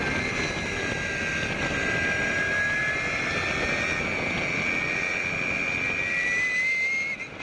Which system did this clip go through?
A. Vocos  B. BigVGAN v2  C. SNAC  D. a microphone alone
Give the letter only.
D